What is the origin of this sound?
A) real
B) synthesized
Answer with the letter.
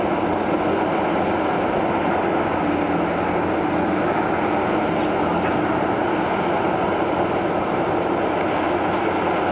A